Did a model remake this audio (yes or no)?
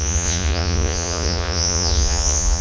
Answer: yes